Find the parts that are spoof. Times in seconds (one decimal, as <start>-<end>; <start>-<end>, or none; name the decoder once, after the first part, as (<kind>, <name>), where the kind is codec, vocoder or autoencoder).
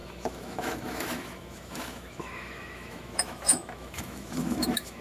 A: 0.0-5.0 (autoencoder, DAC-VAE)